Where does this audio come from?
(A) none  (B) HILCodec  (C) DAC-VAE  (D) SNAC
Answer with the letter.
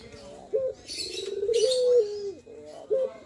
A